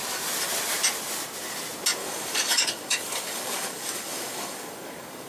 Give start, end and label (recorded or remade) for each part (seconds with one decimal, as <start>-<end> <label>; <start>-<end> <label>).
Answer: 0.0-2.0 recorded; 2.0-5.3 remade